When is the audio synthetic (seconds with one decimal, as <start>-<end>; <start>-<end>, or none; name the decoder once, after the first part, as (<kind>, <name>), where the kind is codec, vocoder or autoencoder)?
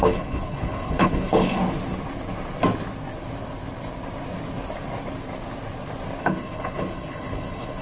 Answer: 0.0-1.6 (codec, HILCodec); 6.2-7.8